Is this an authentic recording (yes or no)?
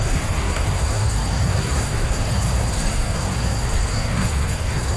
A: no